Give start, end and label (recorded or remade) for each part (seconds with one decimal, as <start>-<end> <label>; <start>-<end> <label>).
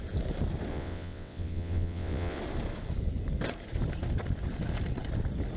0.0-0.7 recorded; 0.7-2.4 remade; 2.4-5.6 recorded